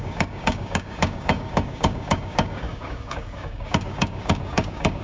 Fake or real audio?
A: fake